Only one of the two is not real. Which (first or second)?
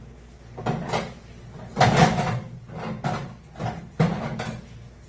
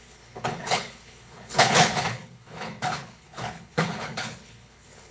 second